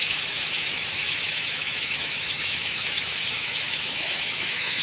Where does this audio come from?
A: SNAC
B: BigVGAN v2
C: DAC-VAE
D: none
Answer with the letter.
C